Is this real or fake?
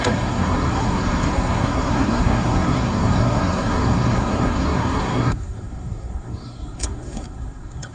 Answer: fake